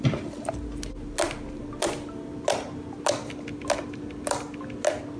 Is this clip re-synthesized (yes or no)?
no